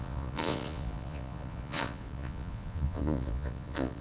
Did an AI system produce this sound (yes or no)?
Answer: yes